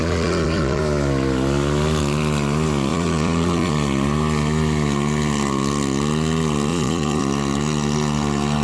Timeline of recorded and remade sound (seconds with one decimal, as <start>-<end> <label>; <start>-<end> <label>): 0.0-0.8 remade; 0.8-2.9 recorded; 2.9-3.7 remade; 3.7-6.7 recorded; 6.7-7.2 remade; 7.2-8.6 recorded